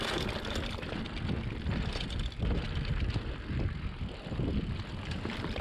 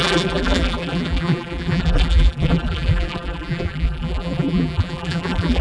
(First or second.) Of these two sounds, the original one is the first